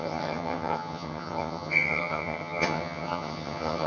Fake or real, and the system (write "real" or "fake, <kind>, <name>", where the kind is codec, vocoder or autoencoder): fake, vocoder, HiFi-GAN